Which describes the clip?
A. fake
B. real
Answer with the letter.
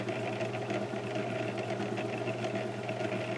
B